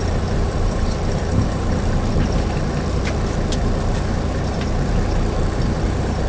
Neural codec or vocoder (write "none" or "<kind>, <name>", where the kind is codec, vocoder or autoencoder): vocoder, BigVGAN v2